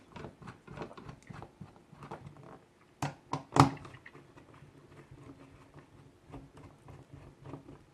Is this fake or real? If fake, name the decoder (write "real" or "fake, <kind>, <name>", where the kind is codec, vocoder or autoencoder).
real